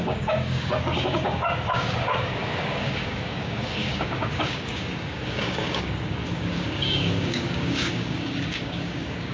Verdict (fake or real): fake